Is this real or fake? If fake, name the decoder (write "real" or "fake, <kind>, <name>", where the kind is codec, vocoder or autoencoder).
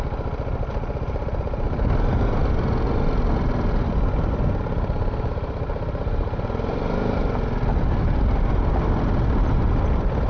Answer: real